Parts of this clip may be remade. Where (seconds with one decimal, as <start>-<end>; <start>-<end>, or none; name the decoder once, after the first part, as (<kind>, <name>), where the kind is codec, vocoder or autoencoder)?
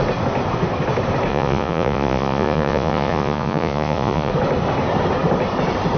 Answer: 1.3-4.3 (vocoder, Vocos)